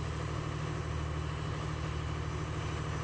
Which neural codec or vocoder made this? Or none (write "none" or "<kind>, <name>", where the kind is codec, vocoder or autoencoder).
none